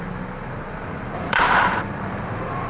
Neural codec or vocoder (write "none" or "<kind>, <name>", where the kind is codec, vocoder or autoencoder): vocoder, BigVGAN v2